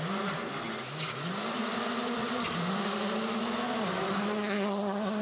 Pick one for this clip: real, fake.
real